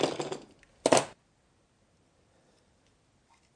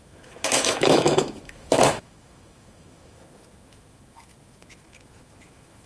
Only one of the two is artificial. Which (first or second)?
second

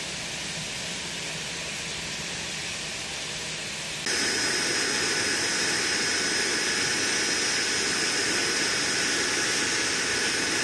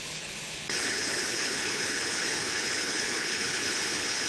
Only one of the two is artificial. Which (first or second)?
second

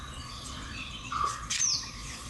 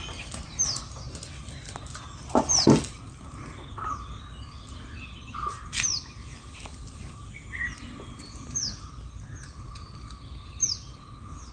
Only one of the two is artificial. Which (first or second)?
first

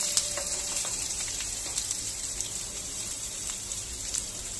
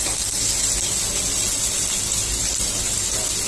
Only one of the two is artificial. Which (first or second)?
first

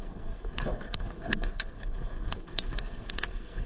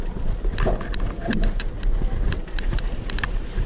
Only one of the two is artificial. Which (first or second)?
first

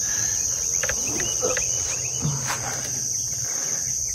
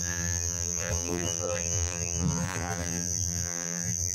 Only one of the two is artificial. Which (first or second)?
second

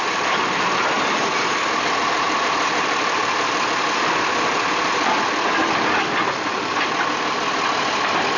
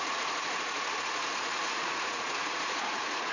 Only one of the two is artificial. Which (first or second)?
second